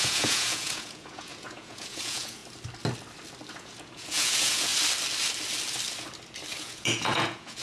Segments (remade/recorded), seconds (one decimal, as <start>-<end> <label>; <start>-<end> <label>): 0.0-2.4 remade; 2.4-3.5 recorded; 3.5-4.7 remade; 4.7-6.6 recorded; 6.6-7.6 remade